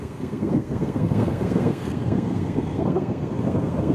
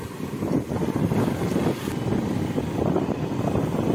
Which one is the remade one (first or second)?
first